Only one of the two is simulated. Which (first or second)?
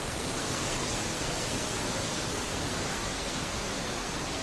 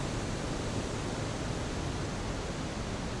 first